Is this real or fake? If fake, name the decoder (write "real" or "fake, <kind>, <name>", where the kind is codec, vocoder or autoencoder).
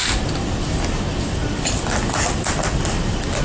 real